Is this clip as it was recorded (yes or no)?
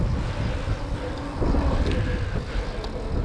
yes